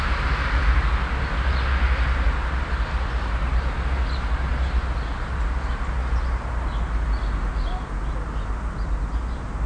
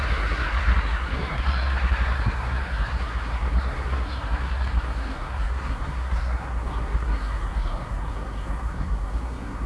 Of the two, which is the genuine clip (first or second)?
first